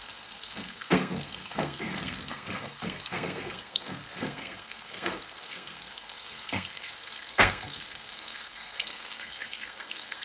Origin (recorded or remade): remade